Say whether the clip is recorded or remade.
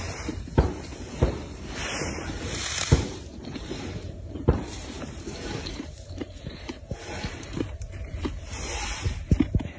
remade